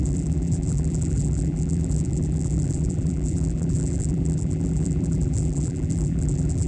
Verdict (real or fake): fake